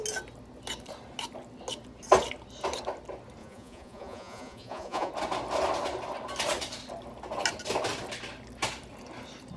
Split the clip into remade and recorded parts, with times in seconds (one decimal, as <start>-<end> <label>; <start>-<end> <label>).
0.0-3.4 recorded; 3.4-5.1 remade; 5.1-9.6 recorded